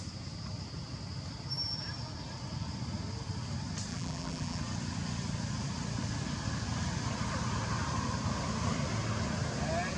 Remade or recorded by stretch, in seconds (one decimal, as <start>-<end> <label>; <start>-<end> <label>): 0.0-3.9 recorded; 3.9-4.6 remade; 4.6-10.0 recorded